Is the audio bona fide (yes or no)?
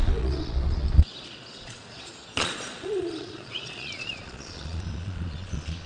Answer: no